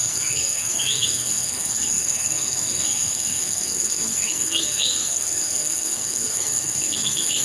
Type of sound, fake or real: fake